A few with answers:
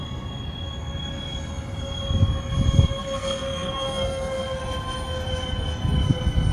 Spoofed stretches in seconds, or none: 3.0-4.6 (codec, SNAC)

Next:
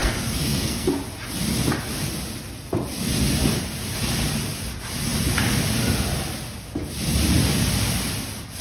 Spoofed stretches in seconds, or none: 0.0-0.9 (codec, SNAC)

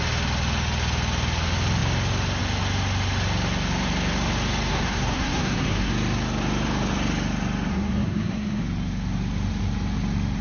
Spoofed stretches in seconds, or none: 4.7-5.9 (codec, SNAC); 7.7-8.6

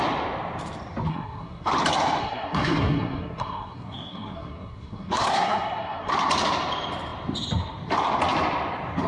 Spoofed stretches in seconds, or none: 1.1-1.7 (codec, SNAC); 2.2-6.1

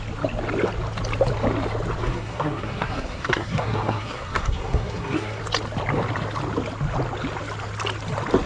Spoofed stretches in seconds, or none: 2.0-5.4 (codec, SNAC)

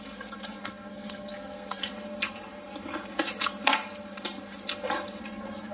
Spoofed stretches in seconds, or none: 0.0-1.8 (codec, SNAC); 5.2-5.7

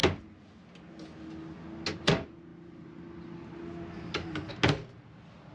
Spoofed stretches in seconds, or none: none